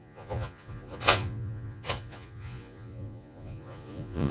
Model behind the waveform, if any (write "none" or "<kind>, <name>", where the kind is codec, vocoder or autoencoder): vocoder, Vocos